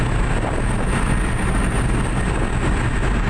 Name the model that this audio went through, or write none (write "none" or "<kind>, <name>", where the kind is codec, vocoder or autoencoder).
none